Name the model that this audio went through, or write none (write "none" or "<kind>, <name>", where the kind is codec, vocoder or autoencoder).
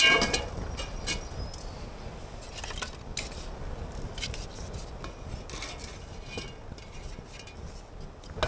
none